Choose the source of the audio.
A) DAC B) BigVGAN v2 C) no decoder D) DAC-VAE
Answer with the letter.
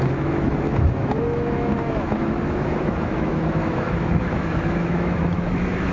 D